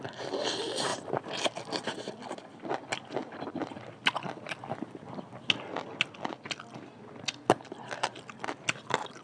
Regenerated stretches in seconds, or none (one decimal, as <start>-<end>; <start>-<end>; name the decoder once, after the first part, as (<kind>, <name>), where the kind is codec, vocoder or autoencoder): none